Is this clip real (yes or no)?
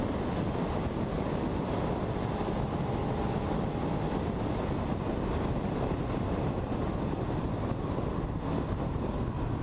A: yes